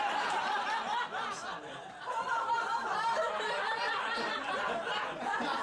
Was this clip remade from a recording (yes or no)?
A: yes